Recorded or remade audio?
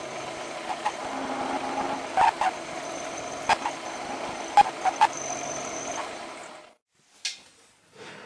recorded